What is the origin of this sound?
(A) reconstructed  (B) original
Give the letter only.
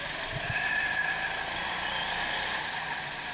B